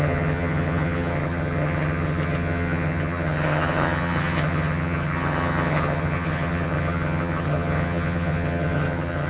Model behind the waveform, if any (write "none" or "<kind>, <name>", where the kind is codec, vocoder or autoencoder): vocoder, HiFi-GAN